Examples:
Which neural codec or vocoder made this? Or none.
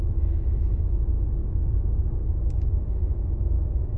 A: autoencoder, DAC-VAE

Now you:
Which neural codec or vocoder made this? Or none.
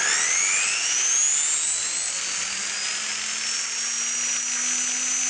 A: none